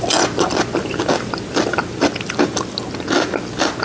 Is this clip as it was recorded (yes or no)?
yes